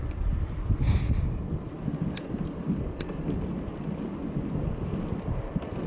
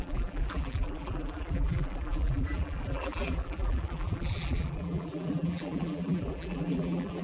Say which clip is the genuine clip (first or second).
first